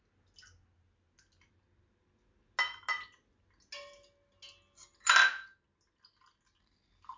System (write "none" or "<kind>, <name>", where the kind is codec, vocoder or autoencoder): none